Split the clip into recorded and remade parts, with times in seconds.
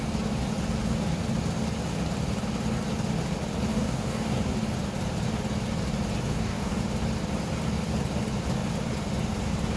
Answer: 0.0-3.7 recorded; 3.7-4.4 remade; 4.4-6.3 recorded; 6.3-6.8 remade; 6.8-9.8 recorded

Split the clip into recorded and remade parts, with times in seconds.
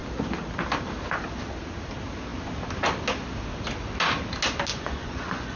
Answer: 0.0-4.7 recorded; 4.7-5.6 remade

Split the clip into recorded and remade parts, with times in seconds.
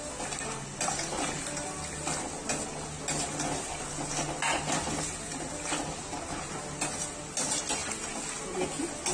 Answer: 0.0-9.1 recorded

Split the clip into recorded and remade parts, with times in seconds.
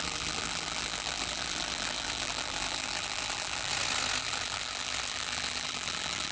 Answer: 0.0-3.7 remade; 3.7-4.2 recorded; 4.2-6.3 remade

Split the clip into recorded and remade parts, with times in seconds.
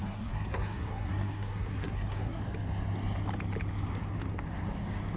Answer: 0.0-2.4 remade; 2.4-5.2 recorded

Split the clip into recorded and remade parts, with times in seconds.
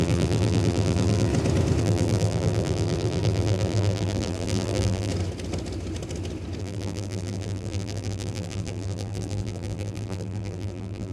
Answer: 0.0-1.3 remade; 1.3-1.8 recorded; 1.8-5.1 remade; 5.1-6.6 recorded; 6.6-11.1 remade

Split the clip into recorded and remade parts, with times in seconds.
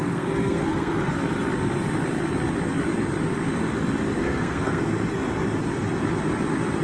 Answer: 0.0-1.1 remade; 1.1-4.2 recorded; 4.2-4.8 remade; 4.8-6.8 recorded